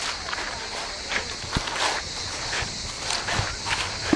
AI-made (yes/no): no